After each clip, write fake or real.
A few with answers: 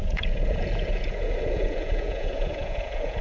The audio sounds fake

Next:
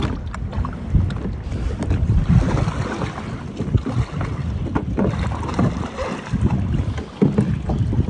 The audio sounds real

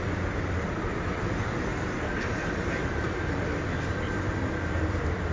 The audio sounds real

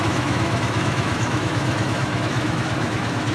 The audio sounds fake